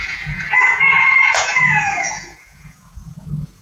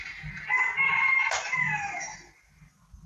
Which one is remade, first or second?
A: first